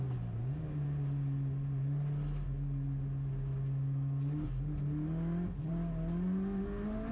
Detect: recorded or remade recorded